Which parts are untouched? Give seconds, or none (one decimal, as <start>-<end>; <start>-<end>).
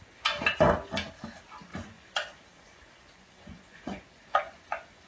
0.0-1.7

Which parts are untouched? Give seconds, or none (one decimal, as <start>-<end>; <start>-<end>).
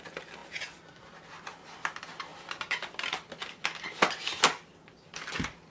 0.0-5.7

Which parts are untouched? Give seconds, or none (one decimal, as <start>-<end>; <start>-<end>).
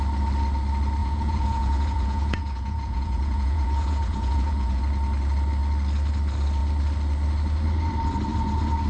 0.0-1.0; 4.8-8.9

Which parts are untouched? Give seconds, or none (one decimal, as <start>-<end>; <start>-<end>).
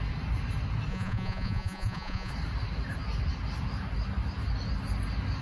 0.0-0.9; 2.3-5.4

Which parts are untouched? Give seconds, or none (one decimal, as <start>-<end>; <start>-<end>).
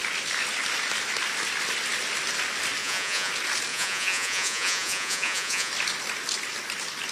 0.0-2.8; 3.3-3.7; 5.7-7.1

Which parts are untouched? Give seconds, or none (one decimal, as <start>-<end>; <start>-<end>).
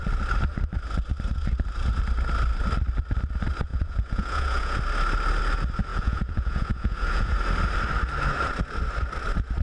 0.0-3.7; 4.8-5.9; 7.4-9.6